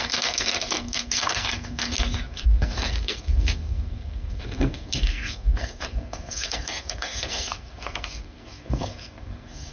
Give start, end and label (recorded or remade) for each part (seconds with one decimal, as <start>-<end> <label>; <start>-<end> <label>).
0.0-9.7 remade